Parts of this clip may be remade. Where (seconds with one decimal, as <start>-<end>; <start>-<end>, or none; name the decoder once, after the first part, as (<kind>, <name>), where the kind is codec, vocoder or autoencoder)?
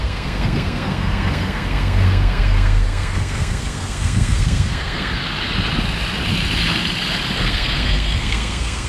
0.0-5.2 (codec, SNAC); 7.4-8.9